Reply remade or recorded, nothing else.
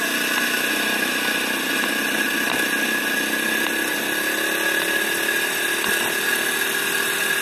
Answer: recorded